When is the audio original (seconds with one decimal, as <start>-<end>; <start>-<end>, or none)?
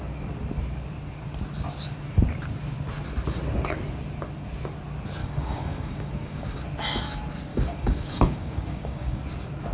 0.0-5.2; 6.6-7.5; 9.2-9.7